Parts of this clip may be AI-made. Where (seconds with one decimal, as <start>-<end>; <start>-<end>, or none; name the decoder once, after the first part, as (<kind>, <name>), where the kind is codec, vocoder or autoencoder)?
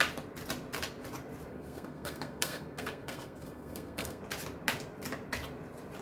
1.5-4.2 (codec, SNAC)